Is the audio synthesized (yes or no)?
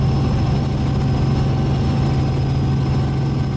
no